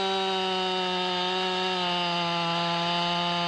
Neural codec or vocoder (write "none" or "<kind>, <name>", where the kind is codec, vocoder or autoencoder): none